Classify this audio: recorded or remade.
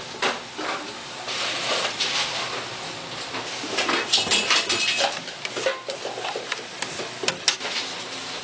recorded